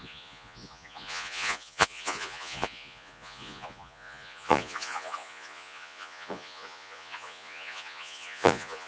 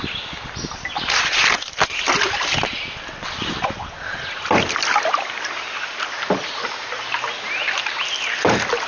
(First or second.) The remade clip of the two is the first